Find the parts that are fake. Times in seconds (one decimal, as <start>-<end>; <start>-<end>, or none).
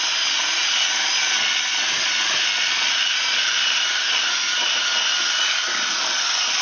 none